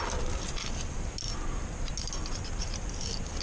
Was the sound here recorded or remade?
recorded